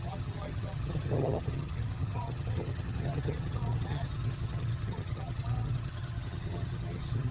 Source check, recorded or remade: remade